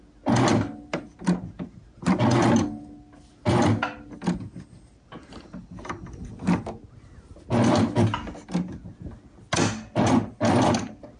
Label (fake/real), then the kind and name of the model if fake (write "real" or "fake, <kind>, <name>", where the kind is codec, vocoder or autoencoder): real